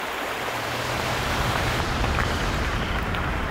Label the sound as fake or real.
fake